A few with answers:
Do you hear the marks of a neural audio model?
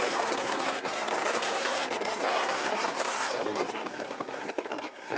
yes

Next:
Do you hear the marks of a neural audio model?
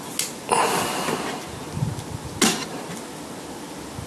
no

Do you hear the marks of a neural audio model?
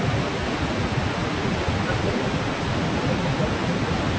no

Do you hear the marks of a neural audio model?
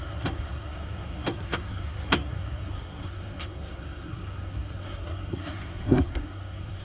yes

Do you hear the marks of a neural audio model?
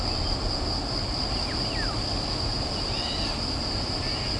no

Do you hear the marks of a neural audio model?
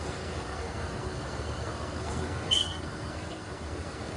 yes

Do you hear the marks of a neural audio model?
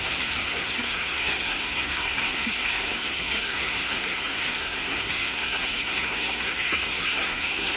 yes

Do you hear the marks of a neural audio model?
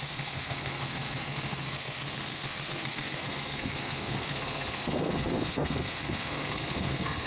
yes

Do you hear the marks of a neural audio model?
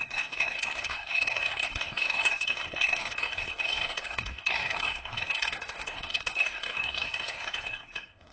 yes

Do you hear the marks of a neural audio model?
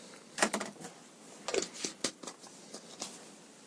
no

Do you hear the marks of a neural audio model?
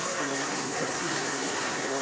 yes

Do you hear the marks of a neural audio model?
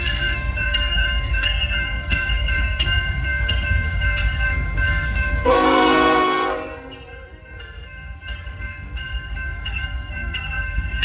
yes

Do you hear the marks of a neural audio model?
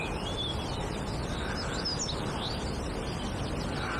no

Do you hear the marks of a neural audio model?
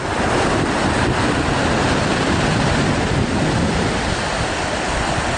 no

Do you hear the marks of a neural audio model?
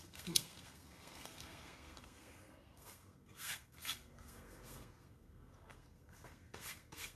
yes